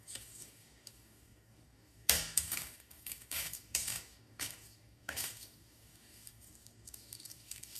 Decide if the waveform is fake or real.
fake